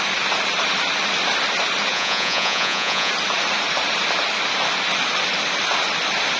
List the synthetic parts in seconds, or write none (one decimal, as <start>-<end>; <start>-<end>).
1.9-3.1